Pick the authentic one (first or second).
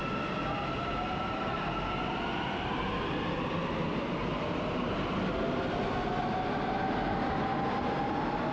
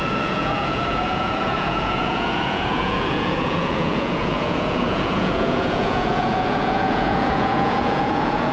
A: first